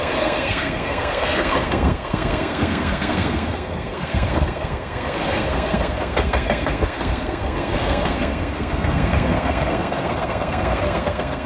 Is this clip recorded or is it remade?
remade